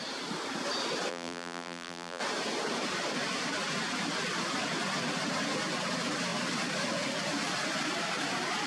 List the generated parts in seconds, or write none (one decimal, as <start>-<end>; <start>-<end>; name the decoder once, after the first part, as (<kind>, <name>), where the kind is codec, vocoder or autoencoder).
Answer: 1.1-2.2 (vocoder, BigVGAN v2)